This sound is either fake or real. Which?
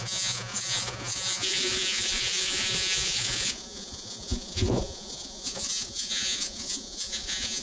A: fake